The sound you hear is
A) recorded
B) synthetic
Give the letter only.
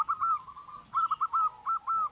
A